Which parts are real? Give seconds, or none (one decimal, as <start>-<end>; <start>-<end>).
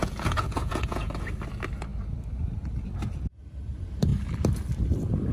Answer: 1.1-5.3